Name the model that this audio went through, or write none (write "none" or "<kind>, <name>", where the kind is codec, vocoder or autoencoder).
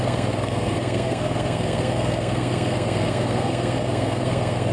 codec, SNAC